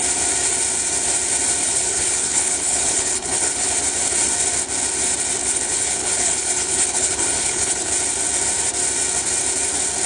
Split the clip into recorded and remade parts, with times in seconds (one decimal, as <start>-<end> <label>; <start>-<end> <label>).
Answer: 0.0-1.6 recorded; 1.6-3.7 remade; 3.7-5.4 recorded; 5.4-7.9 remade; 7.9-10.1 recorded